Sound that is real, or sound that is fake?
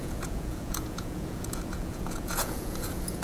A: fake